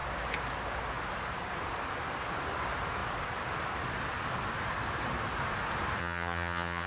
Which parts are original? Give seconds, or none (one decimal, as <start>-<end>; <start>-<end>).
0.0-6.0